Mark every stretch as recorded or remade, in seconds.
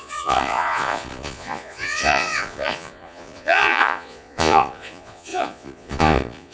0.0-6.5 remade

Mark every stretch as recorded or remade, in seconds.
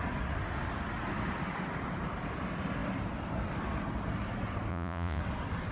0.0-4.7 recorded; 4.7-5.2 remade; 5.2-5.7 recorded